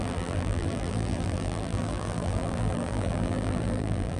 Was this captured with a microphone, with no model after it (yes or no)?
no